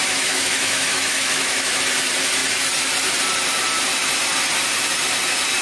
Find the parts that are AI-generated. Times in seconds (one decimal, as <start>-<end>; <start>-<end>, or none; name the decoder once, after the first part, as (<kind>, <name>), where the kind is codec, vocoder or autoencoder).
0.0-1.8 (autoencoder, DAC-VAE)